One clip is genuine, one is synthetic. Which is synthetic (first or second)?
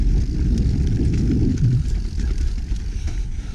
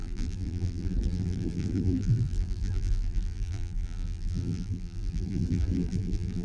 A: second